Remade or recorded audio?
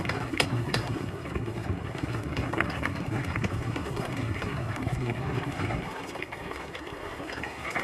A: remade